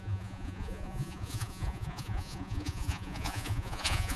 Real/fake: fake